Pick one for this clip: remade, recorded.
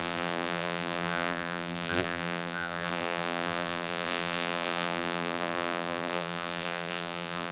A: remade